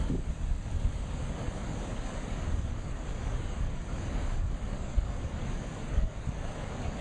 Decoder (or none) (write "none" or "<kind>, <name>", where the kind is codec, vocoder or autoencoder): codec, DAC